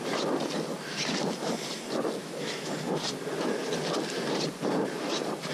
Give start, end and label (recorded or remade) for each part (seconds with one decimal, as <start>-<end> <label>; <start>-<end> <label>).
0.0-2.2 recorded; 2.2-2.7 remade; 2.7-5.5 recorded